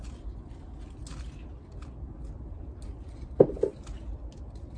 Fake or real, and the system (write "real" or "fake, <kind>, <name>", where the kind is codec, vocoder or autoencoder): real